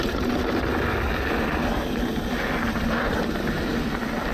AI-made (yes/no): no